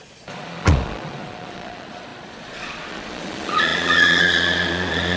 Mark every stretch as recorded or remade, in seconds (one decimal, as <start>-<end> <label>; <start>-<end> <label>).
0.0-5.2 remade

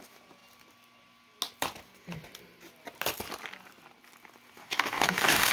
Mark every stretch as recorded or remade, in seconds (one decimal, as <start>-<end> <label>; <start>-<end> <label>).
0.0-4.6 recorded; 4.6-5.5 remade

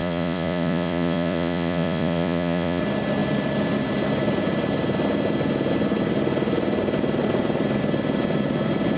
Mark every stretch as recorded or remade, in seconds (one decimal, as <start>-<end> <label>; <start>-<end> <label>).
0.0-2.8 remade; 2.8-9.0 recorded

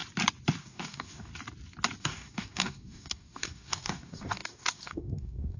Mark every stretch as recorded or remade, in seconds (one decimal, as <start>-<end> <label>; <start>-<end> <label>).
0.0-0.6 recorded; 0.6-1.3 remade; 1.3-2.0 recorded; 2.0-5.6 remade

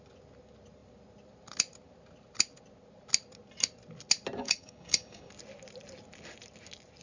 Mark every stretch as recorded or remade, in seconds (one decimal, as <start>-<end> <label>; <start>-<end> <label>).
0.0-4.4 recorded; 4.4-5.3 remade; 5.3-7.0 recorded

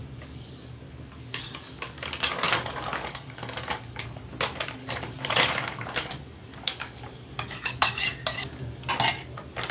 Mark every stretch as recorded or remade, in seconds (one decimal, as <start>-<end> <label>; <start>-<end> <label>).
0.0-4.2 remade; 4.2-4.8 recorded; 4.8-8.9 remade; 8.9-9.7 recorded

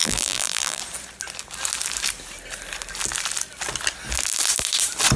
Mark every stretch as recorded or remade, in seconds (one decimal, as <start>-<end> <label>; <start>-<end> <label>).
0.0-0.8 remade; 0.8-5.2 recorded

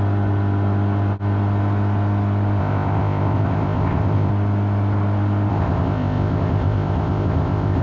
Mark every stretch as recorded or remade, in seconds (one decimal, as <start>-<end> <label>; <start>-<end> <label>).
0.0-2.6 recorded; 2.6-4.3 remade; 4.3-5.5 recorded; 5.5-7.8 remade